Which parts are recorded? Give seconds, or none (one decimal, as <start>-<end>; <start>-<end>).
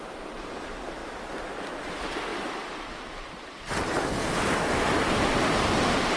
0.0-1.0; 1.8-2.3; 3.7-4.2; 5.4-6.2